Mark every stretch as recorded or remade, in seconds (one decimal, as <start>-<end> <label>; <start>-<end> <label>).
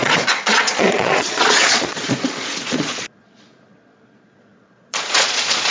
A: 0.0-5.7 remade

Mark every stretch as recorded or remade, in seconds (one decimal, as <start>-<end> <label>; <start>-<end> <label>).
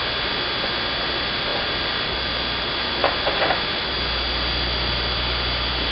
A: 0.0-5.9 recorded